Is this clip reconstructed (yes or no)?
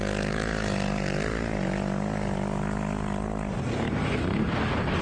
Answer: no